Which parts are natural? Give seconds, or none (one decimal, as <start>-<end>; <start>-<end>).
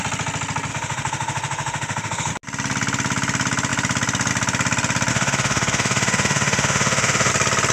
0.0-0.7; 2.3-5.1; 7.3-7.7